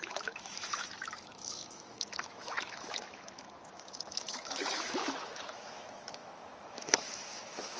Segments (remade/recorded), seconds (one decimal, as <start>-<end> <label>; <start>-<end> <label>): 0.0-7.8 remade

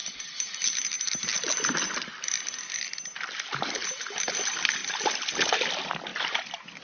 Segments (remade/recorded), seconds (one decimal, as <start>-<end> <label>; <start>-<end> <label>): 0.0-6.8 recorded

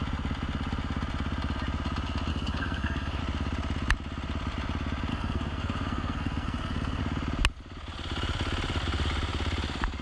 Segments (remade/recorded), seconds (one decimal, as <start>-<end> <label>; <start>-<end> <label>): 0.0-2.3 recorded; 2.3-3.2 remade; 3.2-5.1 recorded; 5.1-7.0 remade; 7.0-10.0 recorded

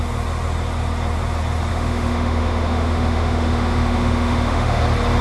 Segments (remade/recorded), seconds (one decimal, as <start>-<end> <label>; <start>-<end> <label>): 0.0-1.7 recorded; 1.7-4.8 remade; 4.8-5.2 recorded

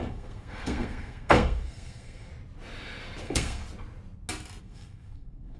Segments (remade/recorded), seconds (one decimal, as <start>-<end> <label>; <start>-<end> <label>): 0.0-2.3 remade; 2.3-3.2 recorded; 3.2-3.6 remade; 3.6-4.6 recorded; 4.6-5.6 remade

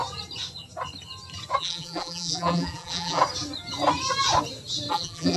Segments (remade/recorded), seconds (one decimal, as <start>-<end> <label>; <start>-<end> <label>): 0.0-1.6 recorded; 1.6-3.2 remade; 3.2-4.9 recorded; 4.9-5.4 remade